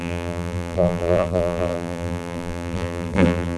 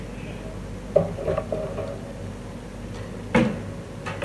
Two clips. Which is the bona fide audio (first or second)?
second